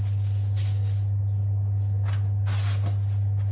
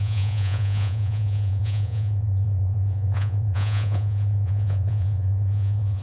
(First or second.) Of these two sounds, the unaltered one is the first